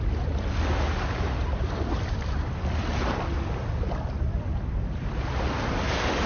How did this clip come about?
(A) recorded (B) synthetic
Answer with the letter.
A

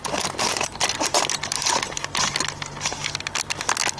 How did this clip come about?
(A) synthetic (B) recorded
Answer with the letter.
B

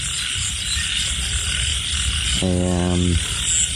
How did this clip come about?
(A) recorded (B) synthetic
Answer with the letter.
A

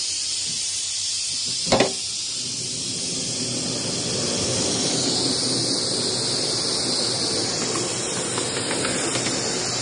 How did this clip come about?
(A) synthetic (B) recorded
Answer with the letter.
B